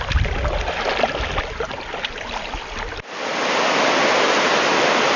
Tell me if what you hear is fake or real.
real